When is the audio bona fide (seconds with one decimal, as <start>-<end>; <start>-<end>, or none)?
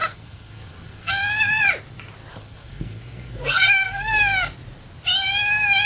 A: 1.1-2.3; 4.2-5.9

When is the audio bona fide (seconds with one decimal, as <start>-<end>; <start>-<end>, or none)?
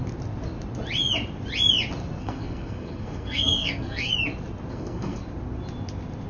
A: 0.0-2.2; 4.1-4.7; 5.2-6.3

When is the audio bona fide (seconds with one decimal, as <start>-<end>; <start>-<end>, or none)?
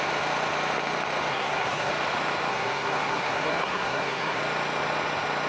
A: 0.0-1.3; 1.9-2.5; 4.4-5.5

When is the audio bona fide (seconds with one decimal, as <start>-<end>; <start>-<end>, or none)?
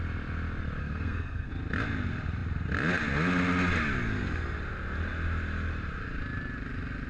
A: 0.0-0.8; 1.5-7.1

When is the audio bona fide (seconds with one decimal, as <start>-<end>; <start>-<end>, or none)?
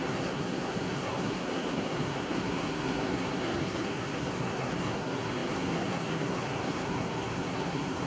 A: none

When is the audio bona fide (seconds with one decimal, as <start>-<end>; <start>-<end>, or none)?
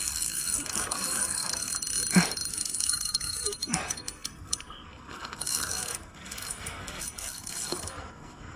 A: 1.7-2.5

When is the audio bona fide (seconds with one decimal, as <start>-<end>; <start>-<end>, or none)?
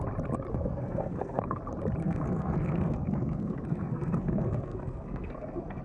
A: 0.0-0.5; 1.6-2.0